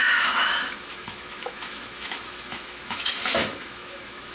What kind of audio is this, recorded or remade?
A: remade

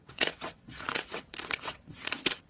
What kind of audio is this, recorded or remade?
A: remade